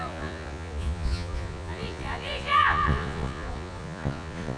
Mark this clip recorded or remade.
remade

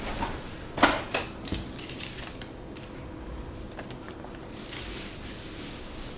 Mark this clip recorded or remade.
recorded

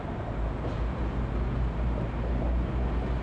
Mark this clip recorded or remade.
recorded